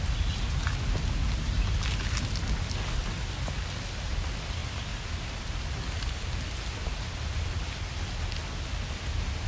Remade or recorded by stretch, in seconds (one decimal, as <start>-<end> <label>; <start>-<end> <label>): 0.0-4.6 recorded; 4.6-7.4 remade; 7.4-9.5 recorded